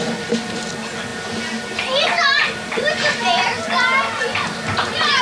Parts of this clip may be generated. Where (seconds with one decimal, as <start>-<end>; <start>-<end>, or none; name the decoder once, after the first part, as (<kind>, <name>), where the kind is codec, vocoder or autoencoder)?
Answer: none